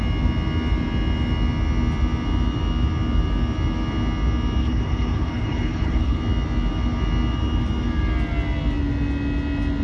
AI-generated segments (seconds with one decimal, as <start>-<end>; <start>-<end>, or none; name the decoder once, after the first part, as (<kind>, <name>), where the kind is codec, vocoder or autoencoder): 4.6-6.2 (codec, HILCodec)